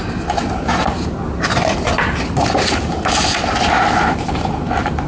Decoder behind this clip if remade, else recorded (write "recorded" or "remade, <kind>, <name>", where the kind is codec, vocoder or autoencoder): recorded